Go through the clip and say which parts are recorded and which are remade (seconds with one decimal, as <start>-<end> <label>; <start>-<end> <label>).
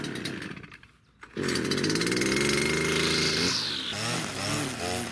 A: 0.0-5.1 recorded